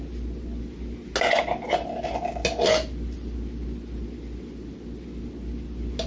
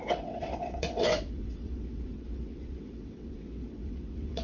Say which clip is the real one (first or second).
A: first